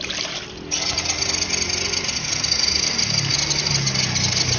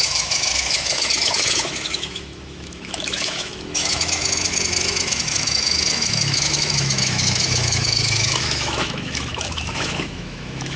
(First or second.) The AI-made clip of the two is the second